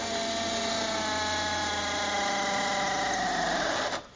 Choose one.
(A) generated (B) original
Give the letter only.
B